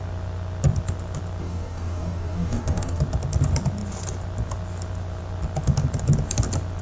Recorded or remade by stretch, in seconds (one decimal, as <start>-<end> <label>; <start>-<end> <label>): 0.0-1.4 recorded; 1.4-3.0 remade; 3.0-6.8 recorded